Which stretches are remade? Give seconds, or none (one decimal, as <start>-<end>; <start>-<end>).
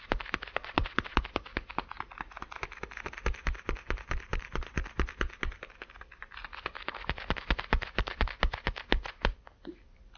0.6-1.2